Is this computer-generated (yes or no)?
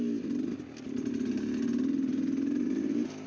no